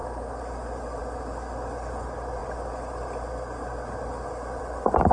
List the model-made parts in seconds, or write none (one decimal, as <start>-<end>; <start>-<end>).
none